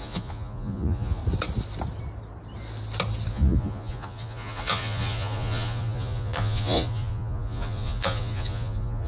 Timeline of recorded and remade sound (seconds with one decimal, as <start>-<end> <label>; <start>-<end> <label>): 0.0-1.2 remade; 1.2-3.3 recorded; 3.3-9.1 remade